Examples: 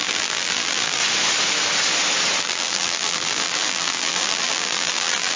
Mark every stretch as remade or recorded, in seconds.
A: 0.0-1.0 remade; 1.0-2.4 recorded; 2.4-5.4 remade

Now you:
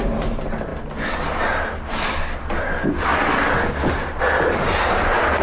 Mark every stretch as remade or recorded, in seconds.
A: 0.0-0.7 remade; 0.7-3.9 recorded; 3.9-5.4 remade

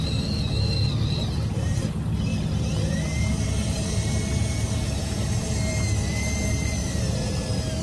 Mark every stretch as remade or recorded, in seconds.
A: 0.0-2.3 recorded; 2.3-5.5 remade; 5.5-7.8 recorded

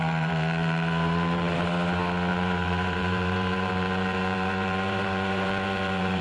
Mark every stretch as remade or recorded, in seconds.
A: 0.0-1.7 remade; 1.7-2.3 recorded; 2.3-6.2 remade

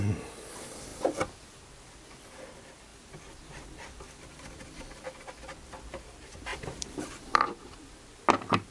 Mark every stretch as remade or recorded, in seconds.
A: 0.0-0.9 recorded; 0.9-1.6 remade; 1.6-2.9 recorded; 2.9-4.6 remade; 4.6-6.5 recorded; 6.5-7.4 remade; 7.4-8.7 recorded